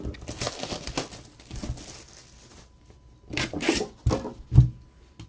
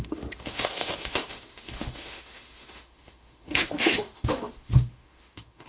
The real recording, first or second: first